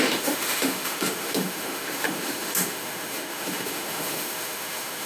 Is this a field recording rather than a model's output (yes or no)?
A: no